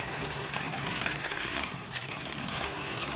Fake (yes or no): yes